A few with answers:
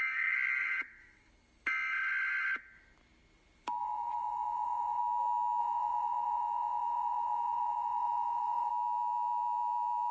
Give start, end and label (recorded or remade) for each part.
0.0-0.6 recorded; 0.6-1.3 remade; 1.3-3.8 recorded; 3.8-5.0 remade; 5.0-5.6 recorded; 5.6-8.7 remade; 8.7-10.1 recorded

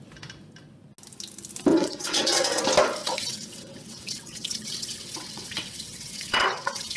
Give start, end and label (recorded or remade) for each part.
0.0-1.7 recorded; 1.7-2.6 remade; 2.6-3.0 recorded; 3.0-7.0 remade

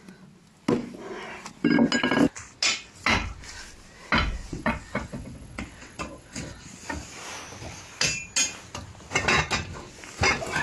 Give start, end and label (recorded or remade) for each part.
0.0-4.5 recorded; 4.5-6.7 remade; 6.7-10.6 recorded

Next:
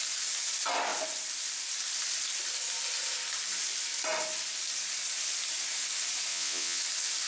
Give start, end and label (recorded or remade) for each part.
0.0-6.3 recorded; 6.3-6.8 remade; 6.8-7.3 recorded

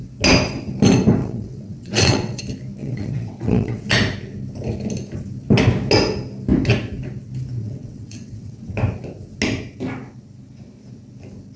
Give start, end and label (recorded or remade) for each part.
0.0-1.2 recorded; 1.2-2.4 remade; 2.4-2.8 recorded; 2.8-3.9 remade; 3.9-7.6 recorded; 7.6-8.7 remade; 8.7-11.6 recorded

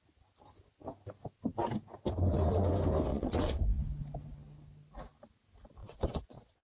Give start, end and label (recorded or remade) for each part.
0.0-3.1 recorded; 3.1-3.6 remade; 3.6-5.8 recorded; 5.8-6.6 remade

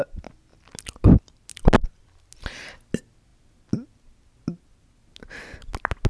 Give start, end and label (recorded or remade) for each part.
0.0-6.1 recorded